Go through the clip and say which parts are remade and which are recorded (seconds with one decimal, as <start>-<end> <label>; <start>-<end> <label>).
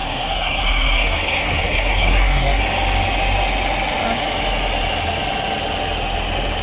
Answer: 0.0-2.6 remade; 2.6-6.6 recorded